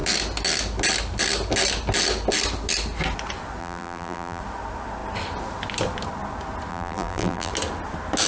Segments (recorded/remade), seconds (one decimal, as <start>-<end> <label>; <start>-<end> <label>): 0.0-3.6 recorded; 3.6-4.4 remade; 4.4-6.7 recorded; 6.7-7.5 remade; 7.5-8.3 recorded